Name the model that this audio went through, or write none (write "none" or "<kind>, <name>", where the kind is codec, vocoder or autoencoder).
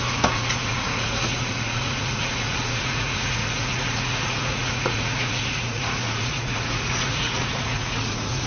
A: vocoder, Vocos